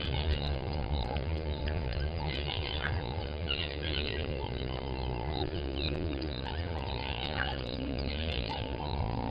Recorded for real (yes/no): no